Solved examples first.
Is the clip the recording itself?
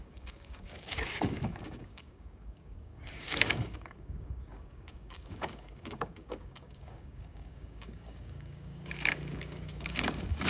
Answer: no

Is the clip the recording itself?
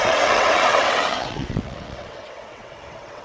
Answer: no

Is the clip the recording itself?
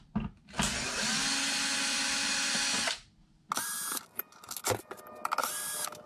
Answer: yes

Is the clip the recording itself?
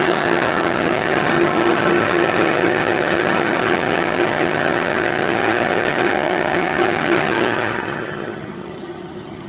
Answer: no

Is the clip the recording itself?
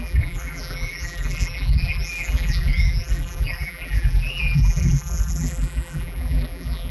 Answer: no